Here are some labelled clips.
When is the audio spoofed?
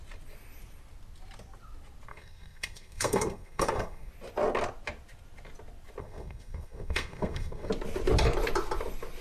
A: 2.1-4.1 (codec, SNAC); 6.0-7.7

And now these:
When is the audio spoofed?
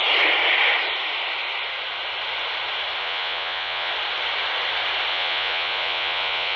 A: 3.0-3.9 (vocoder, Vocos); 5.1-6.6